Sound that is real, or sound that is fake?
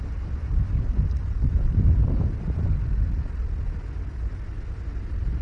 real